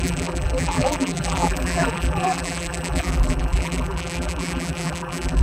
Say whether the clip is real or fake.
fake